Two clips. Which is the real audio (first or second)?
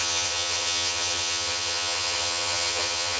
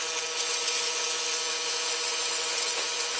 second